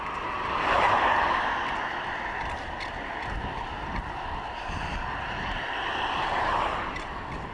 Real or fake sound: real